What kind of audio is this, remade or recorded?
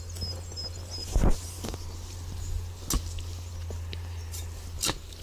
recorded